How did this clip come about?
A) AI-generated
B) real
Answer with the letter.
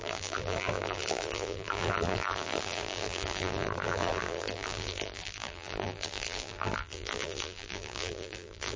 A